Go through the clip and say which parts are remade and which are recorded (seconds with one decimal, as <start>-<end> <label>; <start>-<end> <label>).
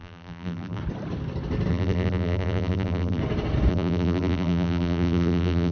0.0-0.8 remade; 0.8-1.7 recorded; 1.7-3.2 remade; 3.2-3.7 recorded; 3.7-5.7 remade